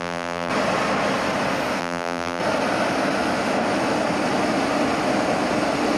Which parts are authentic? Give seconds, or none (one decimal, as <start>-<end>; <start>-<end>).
0.5-1.8; 2.4-6.0